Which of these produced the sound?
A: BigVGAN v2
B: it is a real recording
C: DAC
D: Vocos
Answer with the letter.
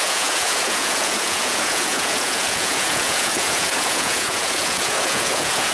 D